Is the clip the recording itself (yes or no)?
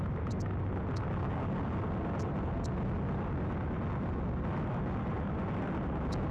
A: yes